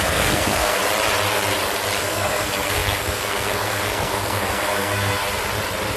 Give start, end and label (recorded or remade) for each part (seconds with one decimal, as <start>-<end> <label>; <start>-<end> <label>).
0.0-0.8 remade; 0.8-2.0 recorded; 2.0-5.2 remade; 5.2-6.0 recorded